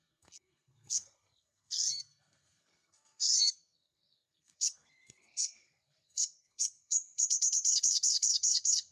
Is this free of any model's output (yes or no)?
no